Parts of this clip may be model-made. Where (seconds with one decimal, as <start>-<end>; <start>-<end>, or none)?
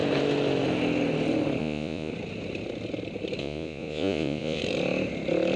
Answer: 1.6-2.1; 3.4-4.6